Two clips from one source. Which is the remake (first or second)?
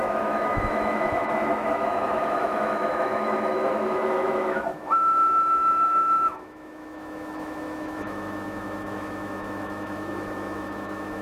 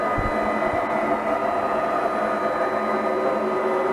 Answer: first